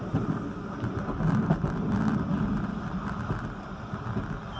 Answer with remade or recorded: recorded